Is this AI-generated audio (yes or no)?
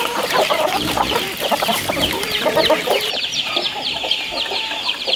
yes